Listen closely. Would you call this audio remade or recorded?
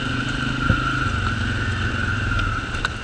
recorded